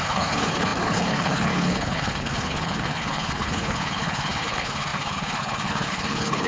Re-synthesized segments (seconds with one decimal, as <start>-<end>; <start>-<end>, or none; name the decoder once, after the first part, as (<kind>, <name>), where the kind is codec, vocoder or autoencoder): 0.0-6.5 (codec, HILCodec)